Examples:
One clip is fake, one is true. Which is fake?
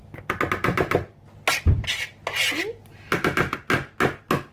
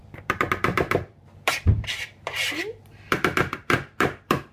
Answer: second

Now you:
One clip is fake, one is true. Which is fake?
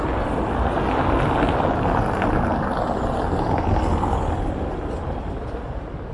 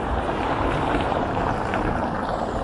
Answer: second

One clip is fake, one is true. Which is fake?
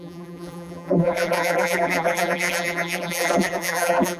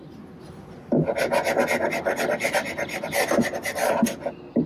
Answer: first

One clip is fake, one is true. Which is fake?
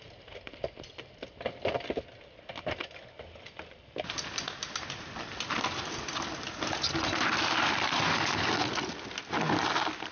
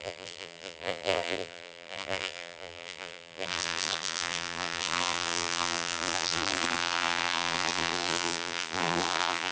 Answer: second